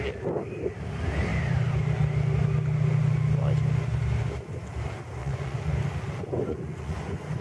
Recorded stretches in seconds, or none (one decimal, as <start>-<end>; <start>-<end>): 0.0-5.2; 5.7-6.5